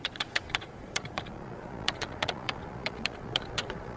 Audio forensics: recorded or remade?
remade